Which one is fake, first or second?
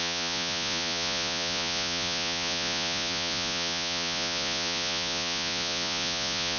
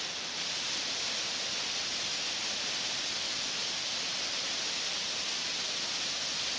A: first